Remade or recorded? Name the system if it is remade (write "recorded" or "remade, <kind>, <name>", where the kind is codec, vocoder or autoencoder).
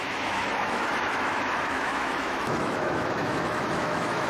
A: remade, autoencoder, DAC-VAE